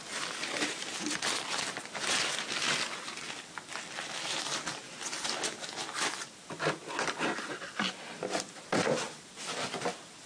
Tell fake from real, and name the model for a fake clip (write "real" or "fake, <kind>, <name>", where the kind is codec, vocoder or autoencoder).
real